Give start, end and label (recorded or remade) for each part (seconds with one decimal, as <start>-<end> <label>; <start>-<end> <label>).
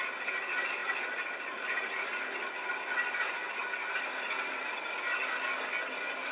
0.0-6.3 recorded